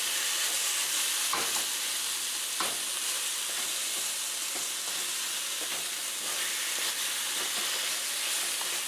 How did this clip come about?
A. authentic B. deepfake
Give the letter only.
A